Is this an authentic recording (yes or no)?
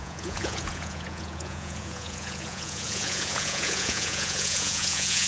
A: no